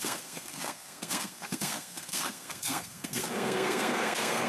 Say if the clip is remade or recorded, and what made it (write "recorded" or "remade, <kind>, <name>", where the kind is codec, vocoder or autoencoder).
remade, codec, SNAC